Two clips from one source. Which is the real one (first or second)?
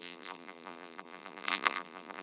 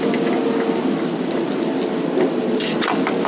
second